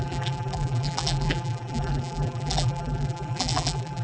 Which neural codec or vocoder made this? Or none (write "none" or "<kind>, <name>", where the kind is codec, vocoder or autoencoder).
vocoder, BigVGAN v2